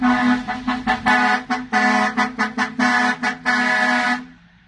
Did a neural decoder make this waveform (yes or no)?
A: no